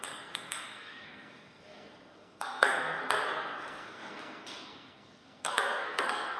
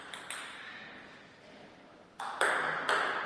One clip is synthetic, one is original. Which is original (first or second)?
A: second